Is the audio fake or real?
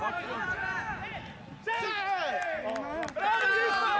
real